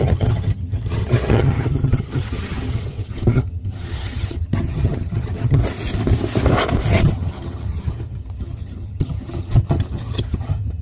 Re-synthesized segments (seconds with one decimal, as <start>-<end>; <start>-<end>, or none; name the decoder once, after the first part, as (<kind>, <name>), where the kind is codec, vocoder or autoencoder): 0.0-5.6 (vocoder, HiFi-GAN); 6.9-10.8